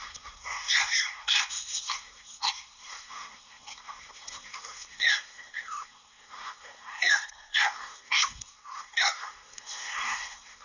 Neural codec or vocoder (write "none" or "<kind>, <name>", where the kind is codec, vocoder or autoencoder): codec, SNAC